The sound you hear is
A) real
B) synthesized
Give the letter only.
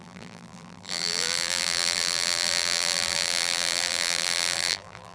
B